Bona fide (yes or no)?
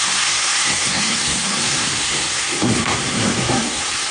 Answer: no